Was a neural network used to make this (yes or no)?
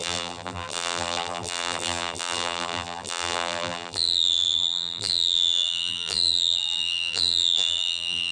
yes